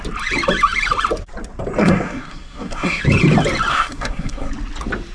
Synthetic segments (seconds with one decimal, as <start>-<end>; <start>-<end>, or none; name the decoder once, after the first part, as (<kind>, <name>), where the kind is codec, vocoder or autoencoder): 1.8-3.0 (codec, SNAC); 3.7-4.5